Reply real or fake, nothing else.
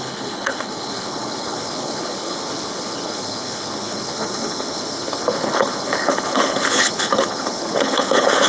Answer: fake